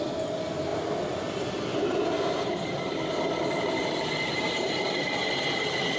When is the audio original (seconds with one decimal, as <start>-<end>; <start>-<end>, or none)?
0.0-6.0